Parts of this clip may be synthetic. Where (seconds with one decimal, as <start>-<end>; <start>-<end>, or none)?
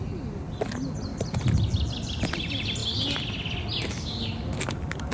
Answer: none